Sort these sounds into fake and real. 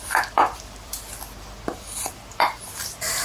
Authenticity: fake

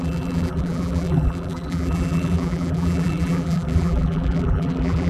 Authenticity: fake